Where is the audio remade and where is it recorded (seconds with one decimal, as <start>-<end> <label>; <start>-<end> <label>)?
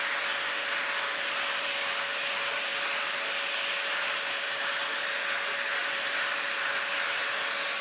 0.0-5.8 recorded; 5.8-6.7 remade; 6.7-7.8 recorded